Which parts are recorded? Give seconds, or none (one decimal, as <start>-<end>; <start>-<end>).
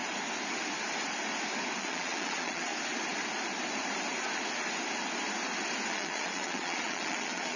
0.0-1.8; 2.7-5.9